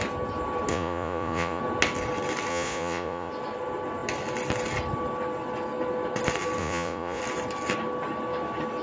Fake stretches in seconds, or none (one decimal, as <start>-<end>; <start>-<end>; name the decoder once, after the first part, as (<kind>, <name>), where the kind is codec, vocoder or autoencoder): 0.7-1.6 (vocoder, Vocos); 2.5-3.3; 6.6-7.2